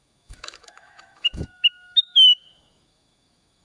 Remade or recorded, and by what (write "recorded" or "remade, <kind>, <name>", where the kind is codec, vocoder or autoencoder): remade, autoencoder, DAC-VAE